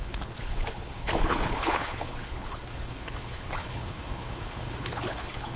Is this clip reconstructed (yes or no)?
yes